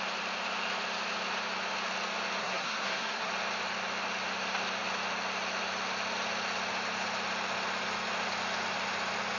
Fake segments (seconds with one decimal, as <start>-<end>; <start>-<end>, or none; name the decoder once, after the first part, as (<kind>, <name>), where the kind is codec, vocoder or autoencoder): 2.4-3.3 (codec, SNAC)